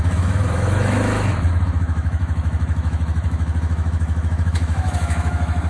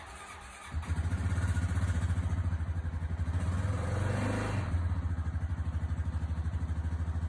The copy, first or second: first